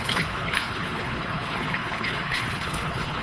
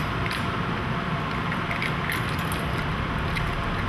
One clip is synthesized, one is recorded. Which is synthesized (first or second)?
first